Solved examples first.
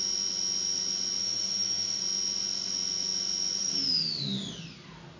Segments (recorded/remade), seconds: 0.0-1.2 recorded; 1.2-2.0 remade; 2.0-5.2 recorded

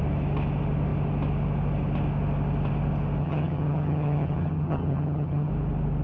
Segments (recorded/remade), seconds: 0.0-3.2 recorded; 3.2-5.5 remade; 5.5-6.0 recorded

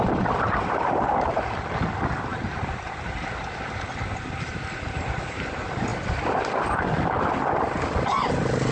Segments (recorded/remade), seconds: 0.0-8.7 recorded

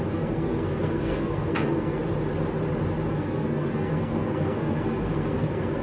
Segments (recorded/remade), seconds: 0.0-2.0 remade; 2.0-3.1 recorded; 3.1-5.8 remade